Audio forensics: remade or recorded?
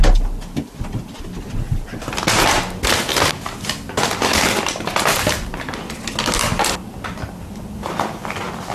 recorded